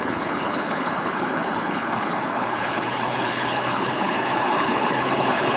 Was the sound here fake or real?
fake